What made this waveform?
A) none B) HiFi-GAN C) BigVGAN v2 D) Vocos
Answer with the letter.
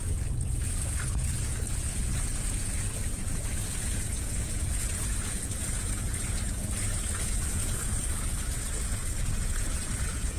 D